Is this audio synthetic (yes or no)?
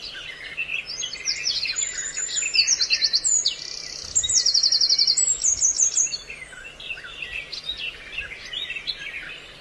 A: no